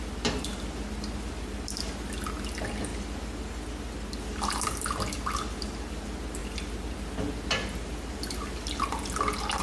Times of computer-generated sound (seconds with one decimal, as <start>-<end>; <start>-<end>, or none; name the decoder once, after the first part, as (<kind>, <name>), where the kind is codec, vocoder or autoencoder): none